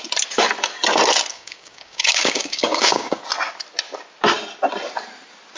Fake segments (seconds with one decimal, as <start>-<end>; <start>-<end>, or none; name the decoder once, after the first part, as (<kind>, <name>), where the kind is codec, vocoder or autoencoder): 1.3-3.2 (codec, DAC)